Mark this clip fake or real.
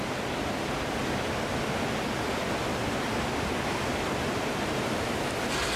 real